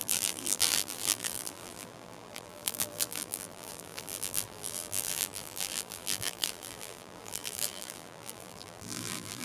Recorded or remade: remade